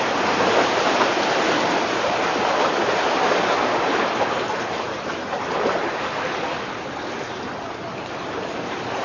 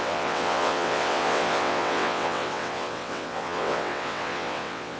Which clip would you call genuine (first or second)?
first